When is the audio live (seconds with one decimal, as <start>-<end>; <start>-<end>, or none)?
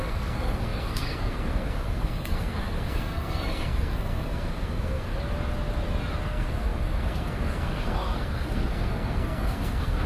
5.1-6.2